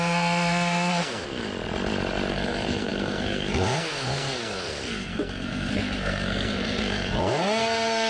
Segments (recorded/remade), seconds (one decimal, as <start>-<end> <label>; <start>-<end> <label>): 0.0-1.5 remade; 1.5-2.3 recorded; 2.3-8.1 remade

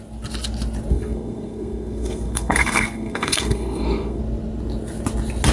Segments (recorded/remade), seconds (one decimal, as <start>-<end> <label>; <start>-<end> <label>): 0.0-0.9 recorded; 0.9-4.2 remade; 4.2-5.5 recorded

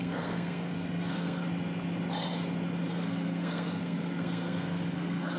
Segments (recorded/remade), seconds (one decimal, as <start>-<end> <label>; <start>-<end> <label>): 0.0-1.4 remade; 1.4-2.9 recorded; 2.9-5.4 remade